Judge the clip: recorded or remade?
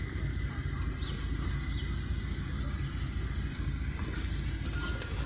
recorded